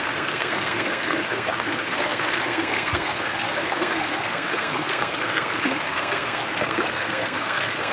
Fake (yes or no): yes